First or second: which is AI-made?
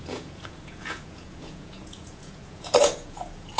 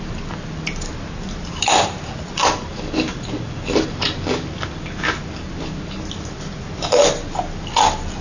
first